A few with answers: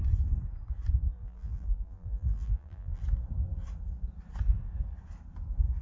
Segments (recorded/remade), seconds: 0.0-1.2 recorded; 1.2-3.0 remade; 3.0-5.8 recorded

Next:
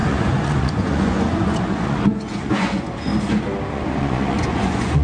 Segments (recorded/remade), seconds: 0.0-3.1 remade; 3.1-3.7 recorded; 3.7-5.0 remade

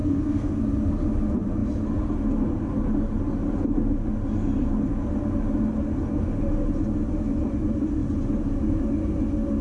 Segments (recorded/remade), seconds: 0.0-0.6 remade; 0.6-9.6 recorded

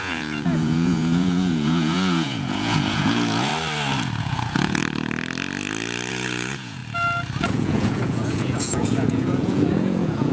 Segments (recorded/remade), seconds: 0.0-3.5 remade; 3.5-4.2 recorded; 4.2-4.8 remade; 4.8-6.1 recorded; 6.1-6.8 remade; 6.8-7.4 recorded; 7.4-10.3 remade

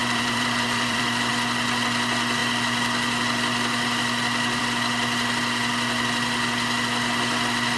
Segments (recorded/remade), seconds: 0.0-1.3 remade; 1.3-7.8 recorded

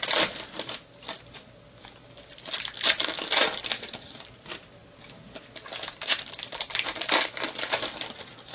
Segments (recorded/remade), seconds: 0.0-8.5 recorded

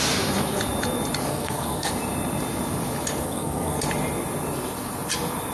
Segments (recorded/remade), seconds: 0.0-1.3 recorded; 1.3-1.9 remade; 1.9-3.2 recorded; 3.2-3.8 remade; 3.8-5.5 recorded